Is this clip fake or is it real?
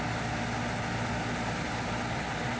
real